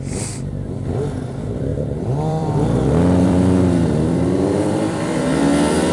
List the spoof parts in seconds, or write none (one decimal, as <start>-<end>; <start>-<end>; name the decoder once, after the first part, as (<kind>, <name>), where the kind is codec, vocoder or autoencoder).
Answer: 1.7-5.2 (vocoder, BigVGAN v2)

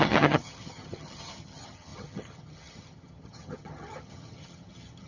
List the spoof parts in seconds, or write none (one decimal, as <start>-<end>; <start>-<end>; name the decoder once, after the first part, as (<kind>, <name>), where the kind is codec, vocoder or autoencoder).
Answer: 0.0-5.1 (vocoder, HiFi-GAN)